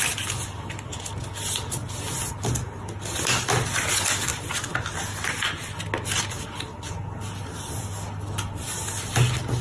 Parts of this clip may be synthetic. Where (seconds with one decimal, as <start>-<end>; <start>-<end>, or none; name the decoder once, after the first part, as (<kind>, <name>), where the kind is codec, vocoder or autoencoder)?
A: none